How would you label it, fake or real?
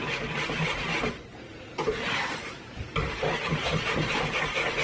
fake